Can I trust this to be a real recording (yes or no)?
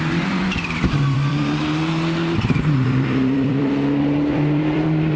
no